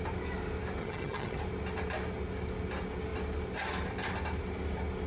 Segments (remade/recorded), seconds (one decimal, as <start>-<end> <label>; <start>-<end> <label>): 0.0-0.8 recorded; 0.8-1.4 remade; 1.4-5.1 recorded